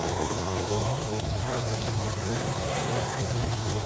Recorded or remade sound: remade